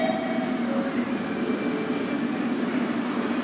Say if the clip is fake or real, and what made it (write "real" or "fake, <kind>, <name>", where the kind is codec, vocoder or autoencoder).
real